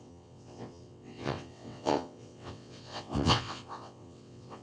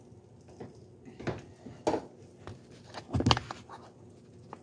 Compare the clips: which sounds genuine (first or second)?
second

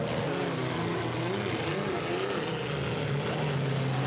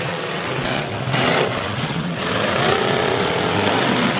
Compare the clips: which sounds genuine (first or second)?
first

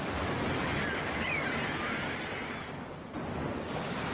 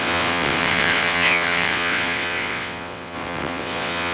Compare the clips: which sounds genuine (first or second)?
first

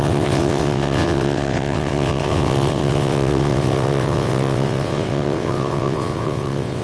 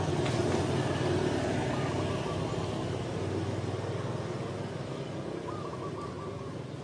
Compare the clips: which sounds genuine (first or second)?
second